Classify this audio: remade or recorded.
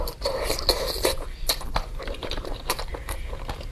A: remade